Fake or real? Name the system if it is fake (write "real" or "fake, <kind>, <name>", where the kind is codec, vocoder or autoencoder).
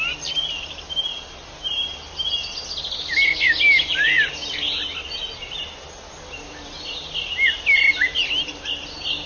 real